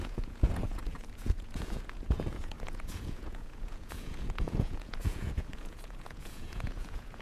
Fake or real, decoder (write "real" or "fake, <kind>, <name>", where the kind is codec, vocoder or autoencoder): fake, vocoder, Vocos